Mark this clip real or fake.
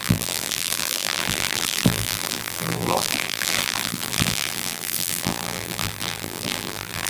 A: fake